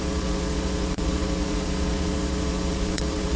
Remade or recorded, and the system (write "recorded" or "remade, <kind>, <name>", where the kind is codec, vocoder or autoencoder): remade, vocoder, Vocos